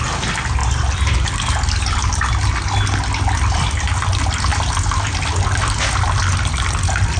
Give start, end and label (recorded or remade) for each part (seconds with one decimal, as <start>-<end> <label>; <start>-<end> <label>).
0.0-7.2 recorded